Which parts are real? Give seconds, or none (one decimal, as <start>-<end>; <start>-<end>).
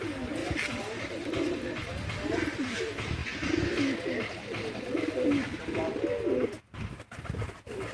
0.4-1.0; 3.2-7.4